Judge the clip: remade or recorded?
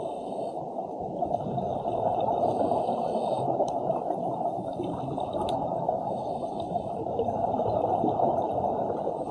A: remade